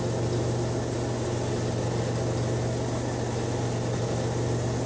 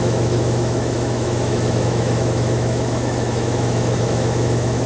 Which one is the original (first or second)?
first